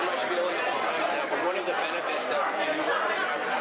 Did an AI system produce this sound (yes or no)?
no